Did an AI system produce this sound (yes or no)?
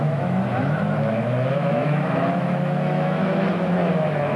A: yes